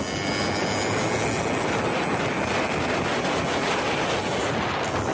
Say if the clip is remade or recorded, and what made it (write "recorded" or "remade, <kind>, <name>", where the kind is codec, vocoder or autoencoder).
recorded